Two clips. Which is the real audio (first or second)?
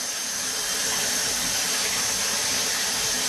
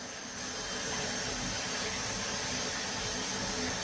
second